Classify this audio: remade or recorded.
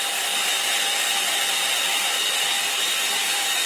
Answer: remade